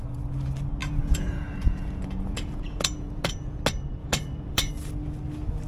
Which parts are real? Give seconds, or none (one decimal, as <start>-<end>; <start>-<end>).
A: 0.0-0.8; 3.6-4.0; 4.7-5.7